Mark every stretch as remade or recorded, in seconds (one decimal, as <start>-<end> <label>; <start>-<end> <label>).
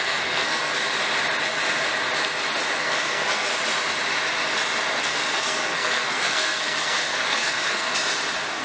0.0-0.7 remade; 0.7-2.8 recorded; 2.8-3.5 remade; 3.5-5.0 recorded; 5.0-7.9 remade; 7.9-8.6 recorded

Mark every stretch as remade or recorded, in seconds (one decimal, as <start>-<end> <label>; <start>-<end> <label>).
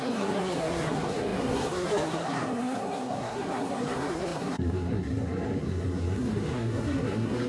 0.0-7.5 remade